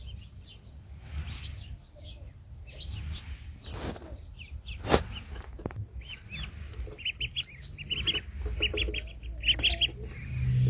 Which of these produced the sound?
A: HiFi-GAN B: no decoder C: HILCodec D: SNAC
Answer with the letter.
B